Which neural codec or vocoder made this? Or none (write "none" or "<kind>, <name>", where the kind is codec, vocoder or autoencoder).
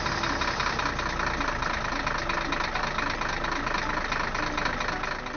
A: none